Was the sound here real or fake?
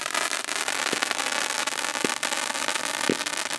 real